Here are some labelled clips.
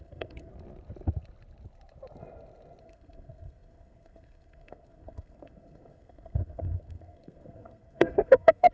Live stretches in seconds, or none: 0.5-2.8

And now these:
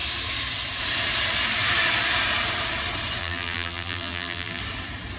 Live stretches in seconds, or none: 0.0-3.2; 4.6-5.2

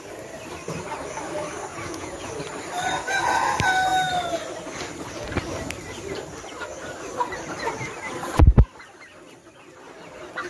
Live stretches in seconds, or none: 0.0-1.7; 2.3-10.5

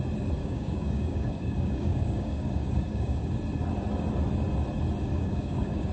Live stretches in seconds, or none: 0.0-0.4; 3.3-5.1

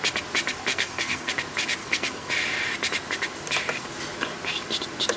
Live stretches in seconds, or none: 0.0-0.7; 1.3-1.8; 2.3-5.2